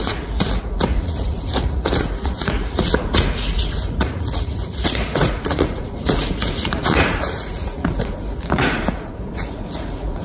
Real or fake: fake